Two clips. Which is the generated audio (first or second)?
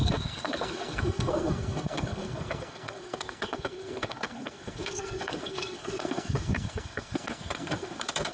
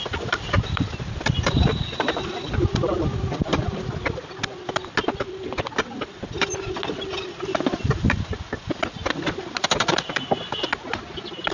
first